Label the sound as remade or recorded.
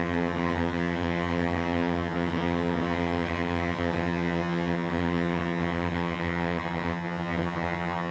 remade